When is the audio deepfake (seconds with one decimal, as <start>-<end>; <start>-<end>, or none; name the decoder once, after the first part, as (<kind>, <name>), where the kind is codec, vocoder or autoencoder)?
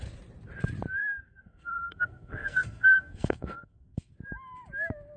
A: 1.0-4.1 (codec, SNAC)